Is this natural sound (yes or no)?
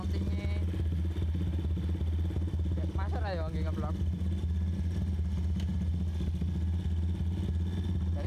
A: yes